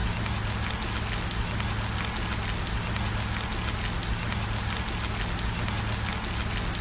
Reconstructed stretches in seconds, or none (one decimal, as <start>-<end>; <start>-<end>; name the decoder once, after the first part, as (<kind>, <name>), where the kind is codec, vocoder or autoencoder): none